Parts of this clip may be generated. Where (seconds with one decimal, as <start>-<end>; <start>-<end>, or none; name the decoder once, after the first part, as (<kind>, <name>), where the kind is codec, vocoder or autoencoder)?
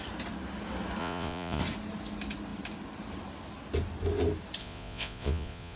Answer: 1.0-1.6 (vocoder, Vocos); 4.6-5.8